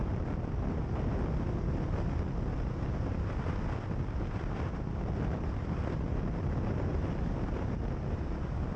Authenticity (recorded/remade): recorded